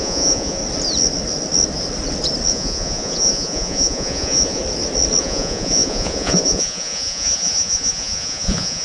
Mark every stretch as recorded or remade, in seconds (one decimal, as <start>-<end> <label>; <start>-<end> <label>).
0.0-0.6 remade; 0.6-2.5 recorded; 2.5-4.6 remade; 4.6-5.2 recorded; 5.2-8.8 remade